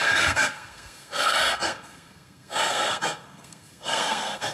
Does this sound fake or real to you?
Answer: fake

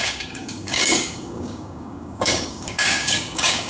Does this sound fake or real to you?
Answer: fake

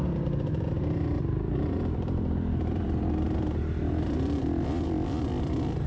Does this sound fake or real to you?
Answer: fake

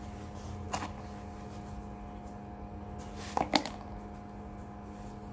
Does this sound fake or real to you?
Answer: real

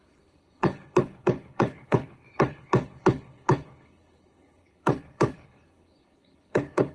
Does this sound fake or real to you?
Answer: fake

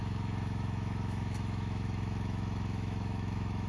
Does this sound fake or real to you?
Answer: fake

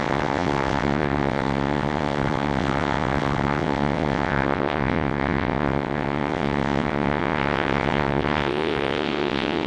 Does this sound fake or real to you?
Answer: fake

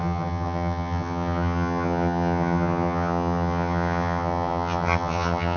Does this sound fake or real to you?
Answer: fake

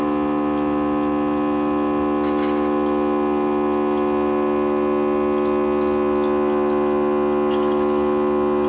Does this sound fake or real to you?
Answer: real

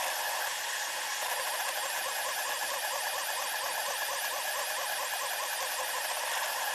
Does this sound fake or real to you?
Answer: real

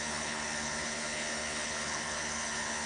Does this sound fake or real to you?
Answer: fake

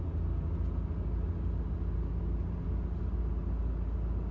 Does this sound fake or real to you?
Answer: real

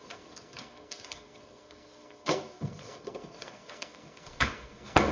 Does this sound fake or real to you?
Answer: fake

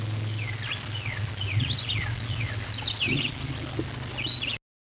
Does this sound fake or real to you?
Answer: real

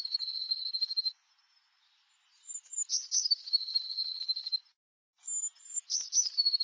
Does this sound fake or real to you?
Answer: real